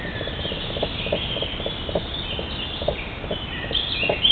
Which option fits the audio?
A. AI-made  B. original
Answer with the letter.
B